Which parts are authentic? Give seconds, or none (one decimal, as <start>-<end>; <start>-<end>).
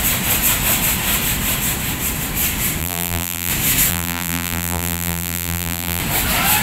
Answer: 0.0-2.8; 3.5-3.9; 6.0-6.6